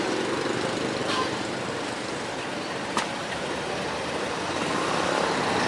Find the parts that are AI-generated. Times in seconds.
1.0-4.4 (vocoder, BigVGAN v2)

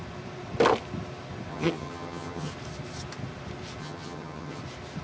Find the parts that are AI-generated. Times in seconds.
1.5-2.5 (vocoder, HiFi-GAN); 3.8-4.6